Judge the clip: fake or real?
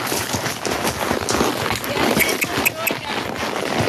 real